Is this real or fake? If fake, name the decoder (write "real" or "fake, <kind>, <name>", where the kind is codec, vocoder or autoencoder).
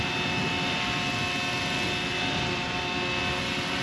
real